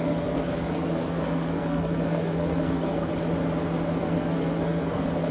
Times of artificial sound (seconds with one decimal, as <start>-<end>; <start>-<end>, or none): 0.0-3.1; 4.0-5.3